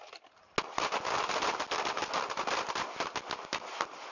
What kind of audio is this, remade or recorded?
recorded